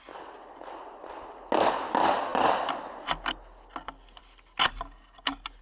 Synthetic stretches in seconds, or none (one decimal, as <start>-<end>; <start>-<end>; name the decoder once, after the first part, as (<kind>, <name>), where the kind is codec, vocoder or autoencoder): none